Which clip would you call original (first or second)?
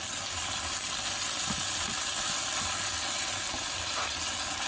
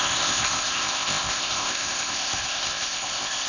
first